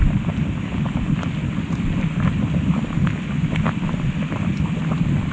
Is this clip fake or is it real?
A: real